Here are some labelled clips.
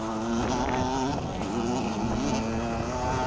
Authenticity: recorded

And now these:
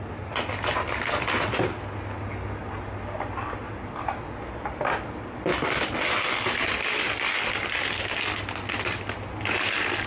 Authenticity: recorded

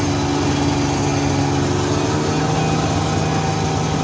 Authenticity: recorded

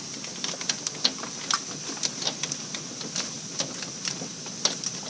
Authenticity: recorded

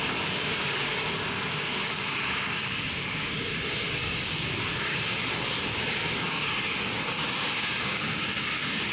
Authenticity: remade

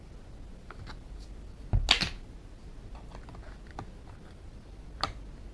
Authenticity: recorded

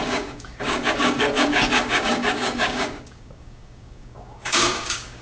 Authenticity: remade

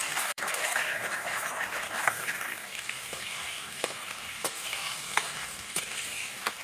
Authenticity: remade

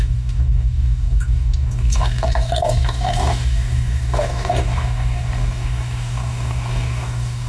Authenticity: remade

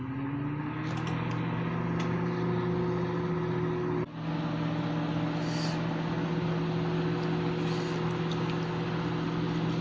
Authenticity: recorded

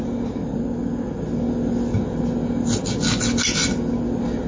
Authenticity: recorded